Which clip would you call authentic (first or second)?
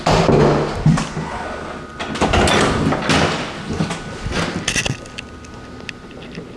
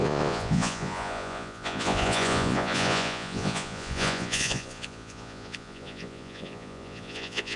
first